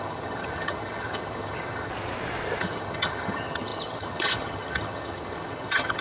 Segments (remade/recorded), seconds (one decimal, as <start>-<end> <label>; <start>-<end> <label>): 0.0-1.9 remade; 1.9-2.6 recorded; 2.6-6.0 remade